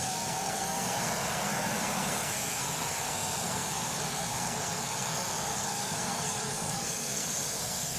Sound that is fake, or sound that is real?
fake